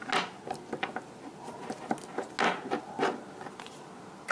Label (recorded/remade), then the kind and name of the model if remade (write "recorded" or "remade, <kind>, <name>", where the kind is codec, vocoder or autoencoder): recorded